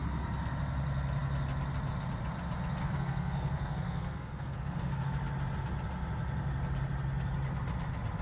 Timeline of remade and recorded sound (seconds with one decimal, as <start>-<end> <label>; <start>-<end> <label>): 0.0-2.8 recorded; 2.8-5.0 remade; 5.0-8.2 recorded